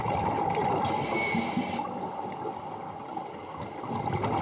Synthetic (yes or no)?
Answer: no